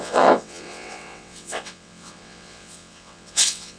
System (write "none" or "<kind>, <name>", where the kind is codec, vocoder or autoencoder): vocoder, WaveNeXt